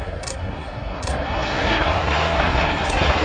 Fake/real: fake